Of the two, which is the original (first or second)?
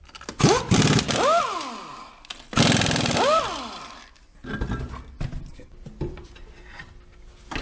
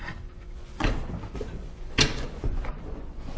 first